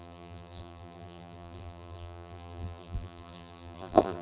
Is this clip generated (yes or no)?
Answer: yes